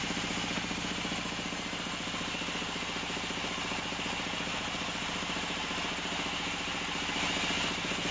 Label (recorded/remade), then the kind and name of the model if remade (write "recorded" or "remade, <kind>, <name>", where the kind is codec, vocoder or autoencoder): recorded